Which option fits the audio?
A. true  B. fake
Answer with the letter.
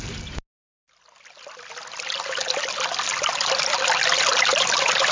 A